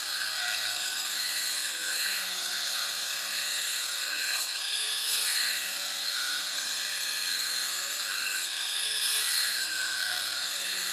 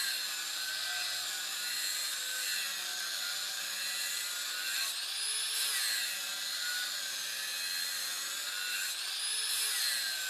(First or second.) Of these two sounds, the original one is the second